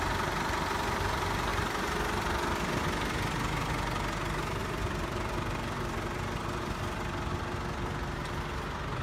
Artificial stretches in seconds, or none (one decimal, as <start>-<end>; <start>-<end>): 4.6-8.4